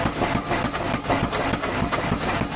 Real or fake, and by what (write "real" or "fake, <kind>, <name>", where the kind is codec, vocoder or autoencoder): real